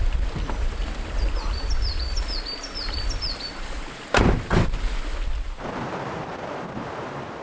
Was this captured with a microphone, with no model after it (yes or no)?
yes